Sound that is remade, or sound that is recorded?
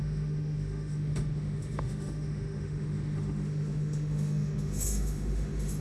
remade